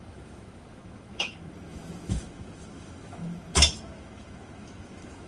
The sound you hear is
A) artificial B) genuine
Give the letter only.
A